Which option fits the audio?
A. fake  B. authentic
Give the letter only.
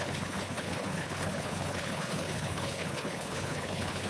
A